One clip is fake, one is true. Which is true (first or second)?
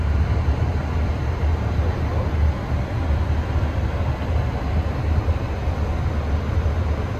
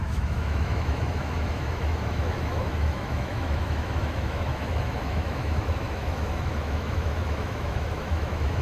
first